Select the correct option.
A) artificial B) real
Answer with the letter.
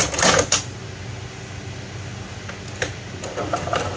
B